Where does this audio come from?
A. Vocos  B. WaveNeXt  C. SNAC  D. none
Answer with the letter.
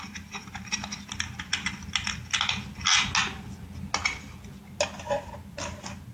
D